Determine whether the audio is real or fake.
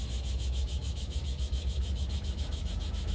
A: fake